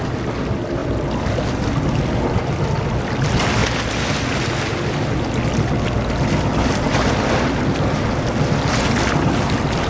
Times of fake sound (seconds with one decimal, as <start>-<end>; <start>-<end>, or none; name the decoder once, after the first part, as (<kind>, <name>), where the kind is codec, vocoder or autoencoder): none